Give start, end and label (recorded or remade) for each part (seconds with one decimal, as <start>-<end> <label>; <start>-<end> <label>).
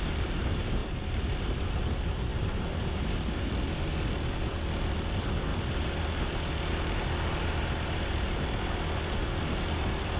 0.0-10.2 recorded